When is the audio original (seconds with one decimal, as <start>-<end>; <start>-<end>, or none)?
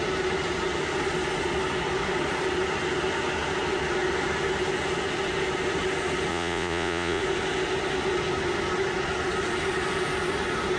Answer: 0.0-6.3; 7.2-10.8